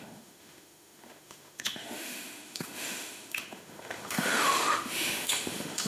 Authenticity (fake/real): fake